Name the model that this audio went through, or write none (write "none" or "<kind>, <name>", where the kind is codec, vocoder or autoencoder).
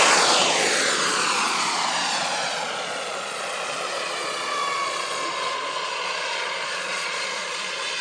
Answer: vocoder, Vocos